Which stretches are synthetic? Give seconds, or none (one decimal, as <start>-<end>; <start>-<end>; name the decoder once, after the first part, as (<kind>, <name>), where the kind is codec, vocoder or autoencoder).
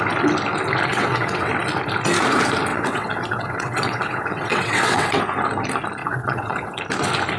0.9-1.5 (vocoder, WaveNeXt); 2.7-5.2; 6.0-6.8